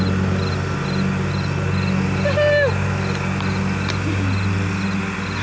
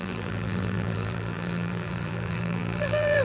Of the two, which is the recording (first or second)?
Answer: first